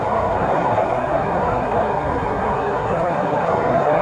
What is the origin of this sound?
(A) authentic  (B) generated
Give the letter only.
B